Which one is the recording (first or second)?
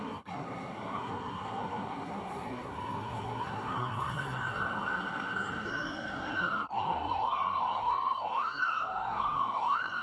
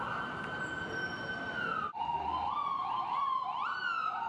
second